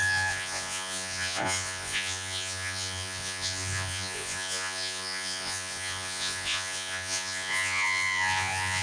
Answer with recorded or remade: remade